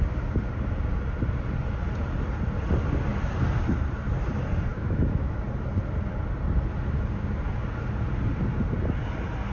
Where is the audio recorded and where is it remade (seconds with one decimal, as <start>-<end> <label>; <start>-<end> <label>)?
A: 0.0-4.7 recorded; 4.7-5.4 remade; 5.4-9.5 recorded